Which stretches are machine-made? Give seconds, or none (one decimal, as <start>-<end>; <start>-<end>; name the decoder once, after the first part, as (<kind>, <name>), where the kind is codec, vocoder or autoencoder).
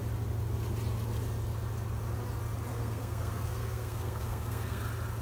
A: 2.7-4.8 (codec, SNAC)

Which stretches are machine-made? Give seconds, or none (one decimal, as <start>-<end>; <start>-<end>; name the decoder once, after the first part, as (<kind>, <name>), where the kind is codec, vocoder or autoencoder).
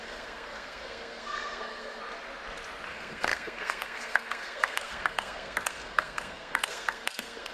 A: 0.0-2.0 (codec, SNAC); 2.9-7.5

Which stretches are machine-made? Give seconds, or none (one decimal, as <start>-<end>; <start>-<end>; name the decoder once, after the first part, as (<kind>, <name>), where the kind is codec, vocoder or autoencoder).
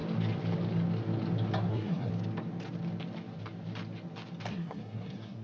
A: 1.7-2.1 (codec, SNAC); 4.5-5.4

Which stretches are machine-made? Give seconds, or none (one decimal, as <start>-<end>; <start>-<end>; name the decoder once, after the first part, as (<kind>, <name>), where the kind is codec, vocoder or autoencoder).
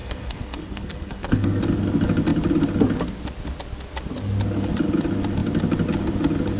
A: 0.0-1.6 (codec, SNAC)